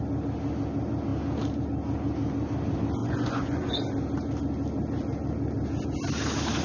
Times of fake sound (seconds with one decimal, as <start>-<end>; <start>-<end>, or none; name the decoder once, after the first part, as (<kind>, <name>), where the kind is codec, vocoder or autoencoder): 3.0-3.7 (vocoder, Vocos)